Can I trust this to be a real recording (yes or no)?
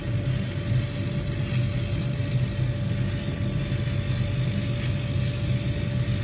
yes